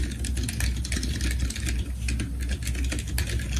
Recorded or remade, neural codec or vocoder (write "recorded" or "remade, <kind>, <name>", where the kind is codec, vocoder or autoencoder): recorded